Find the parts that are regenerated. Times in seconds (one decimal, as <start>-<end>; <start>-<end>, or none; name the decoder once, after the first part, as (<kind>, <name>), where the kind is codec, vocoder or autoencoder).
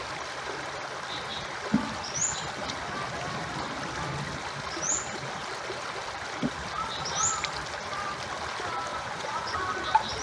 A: 8.9-9.6 (vocoder, Vocos)